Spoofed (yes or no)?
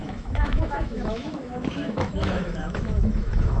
yes